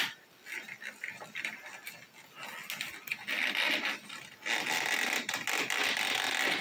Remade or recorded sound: recorded